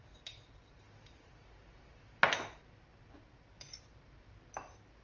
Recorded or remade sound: recorded